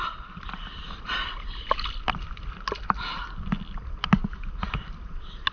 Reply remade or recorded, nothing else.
recorded